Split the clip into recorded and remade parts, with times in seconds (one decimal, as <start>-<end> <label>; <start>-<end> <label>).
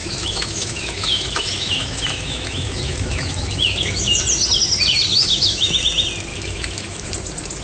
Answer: 0.0-4.2 remade; 4.2-5.1 recorded; 5.1-5.8 remade; 5.8-6.3 recorded; 6.3-7.1 remade; 7.1-7.6 recorded